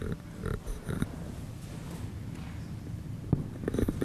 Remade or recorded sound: recorded